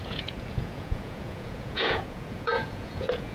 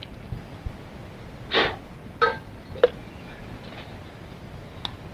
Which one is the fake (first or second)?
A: first